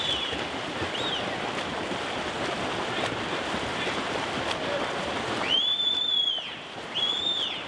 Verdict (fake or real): fake